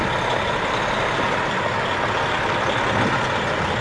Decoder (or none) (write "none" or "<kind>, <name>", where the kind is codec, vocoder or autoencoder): none